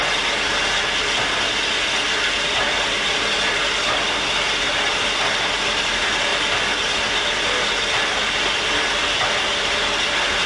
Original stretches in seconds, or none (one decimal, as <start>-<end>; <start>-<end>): 0.0-10.5